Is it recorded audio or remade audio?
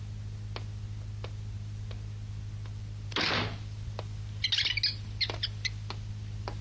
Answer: recorded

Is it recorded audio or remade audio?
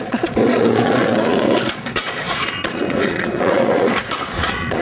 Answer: remade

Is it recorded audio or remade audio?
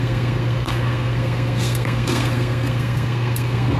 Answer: remade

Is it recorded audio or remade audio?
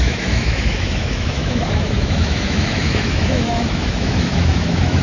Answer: remade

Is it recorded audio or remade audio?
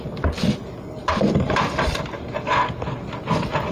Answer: recorded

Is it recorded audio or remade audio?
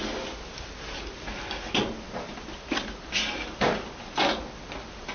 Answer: recorded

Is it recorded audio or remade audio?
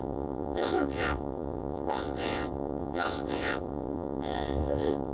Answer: remade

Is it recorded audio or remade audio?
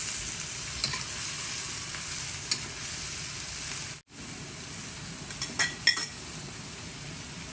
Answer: recorded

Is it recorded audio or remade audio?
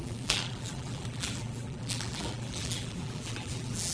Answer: remade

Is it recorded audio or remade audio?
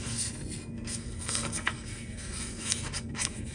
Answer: remade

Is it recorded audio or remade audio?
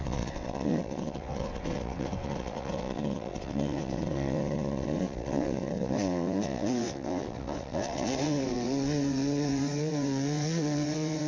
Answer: remade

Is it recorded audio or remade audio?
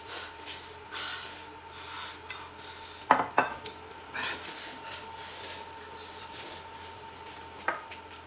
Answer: recorded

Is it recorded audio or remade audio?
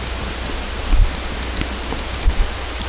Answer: recorded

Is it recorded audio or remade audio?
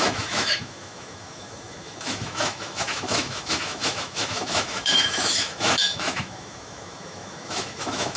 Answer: remade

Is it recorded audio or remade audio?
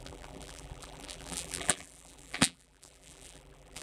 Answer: remade